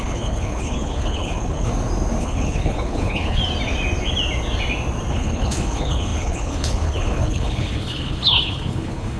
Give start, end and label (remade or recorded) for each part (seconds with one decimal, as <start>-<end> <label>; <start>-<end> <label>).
0.0-1.7 remade; 1.7-2.2 recorded; 2.2-3.4 remade; 3.4-5.1 recorded; 5.1-9.2 remade